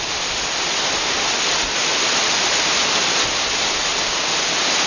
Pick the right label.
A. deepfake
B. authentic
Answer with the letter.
B